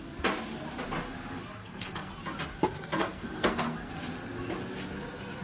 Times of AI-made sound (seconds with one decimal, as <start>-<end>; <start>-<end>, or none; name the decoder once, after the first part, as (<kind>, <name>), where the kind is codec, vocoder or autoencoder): 1.6-2.1 (codec, SNAC); 3.0-3.9